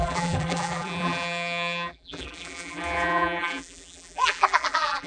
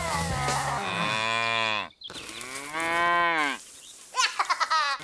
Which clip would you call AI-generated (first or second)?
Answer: first